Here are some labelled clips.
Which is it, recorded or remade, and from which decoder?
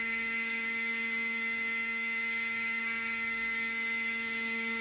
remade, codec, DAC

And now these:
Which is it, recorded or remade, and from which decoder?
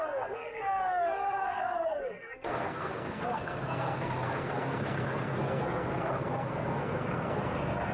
remade, codec, SNAC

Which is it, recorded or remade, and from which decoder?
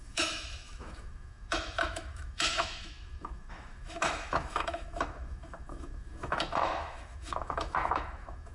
remade, autoencoder, DAC-VAE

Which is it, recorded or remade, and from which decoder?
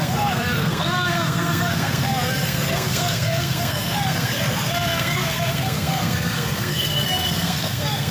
remade, codec, SNAC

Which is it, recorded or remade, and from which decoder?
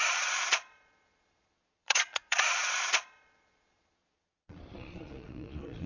remade, vocoder, Vocos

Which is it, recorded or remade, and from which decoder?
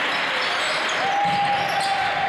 recorded